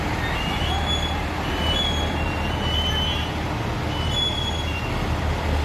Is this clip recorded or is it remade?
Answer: recorded